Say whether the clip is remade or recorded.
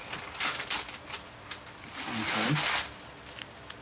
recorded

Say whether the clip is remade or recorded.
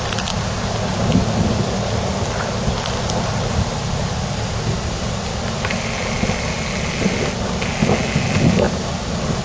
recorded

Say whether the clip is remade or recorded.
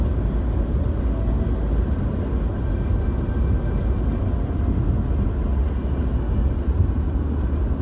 recorded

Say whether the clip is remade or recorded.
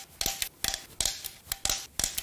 recorded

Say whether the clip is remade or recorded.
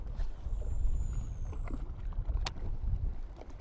recorded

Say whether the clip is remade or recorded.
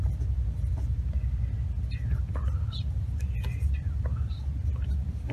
recorded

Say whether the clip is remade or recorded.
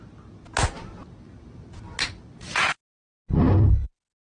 recorded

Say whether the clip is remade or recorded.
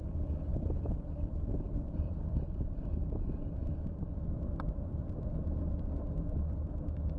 remade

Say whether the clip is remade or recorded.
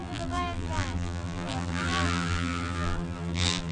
remade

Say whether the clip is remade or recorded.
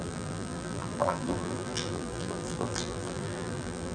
remade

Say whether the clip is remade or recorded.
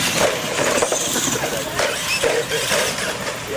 remade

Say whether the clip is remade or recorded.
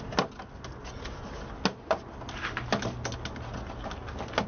recorded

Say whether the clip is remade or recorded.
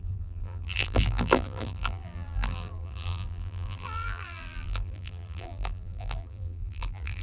remade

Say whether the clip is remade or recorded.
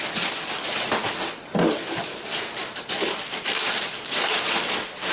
recorded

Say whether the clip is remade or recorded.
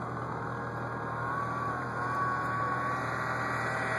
recorded